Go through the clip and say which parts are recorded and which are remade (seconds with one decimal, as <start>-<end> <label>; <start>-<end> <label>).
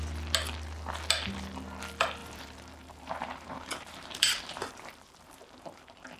0.0-2.2 recorded; 2.2-6.2 remade